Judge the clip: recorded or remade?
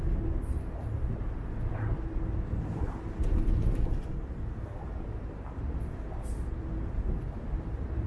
recorded